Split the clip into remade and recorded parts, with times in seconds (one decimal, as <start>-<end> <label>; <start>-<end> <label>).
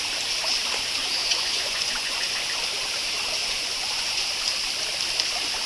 0.0-1.2 recorded; 1.2-2.4 remade; 2.4-3.4 recorded; 3.4-4.2 remade; 4.2-5.7 recorded